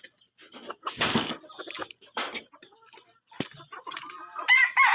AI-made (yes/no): no